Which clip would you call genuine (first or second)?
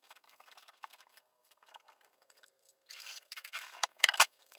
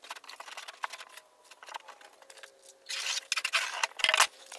second